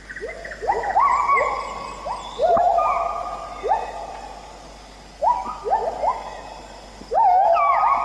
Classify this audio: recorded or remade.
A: recorded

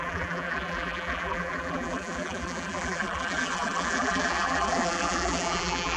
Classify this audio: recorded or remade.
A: remade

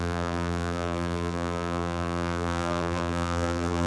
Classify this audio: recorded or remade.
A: remade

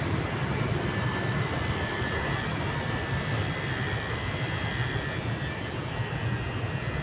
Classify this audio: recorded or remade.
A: remade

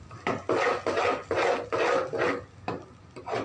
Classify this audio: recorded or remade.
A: recorded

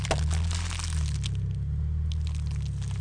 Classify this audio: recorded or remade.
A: recorded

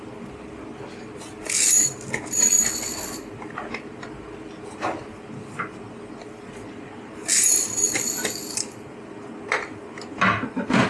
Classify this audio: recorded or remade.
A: recorded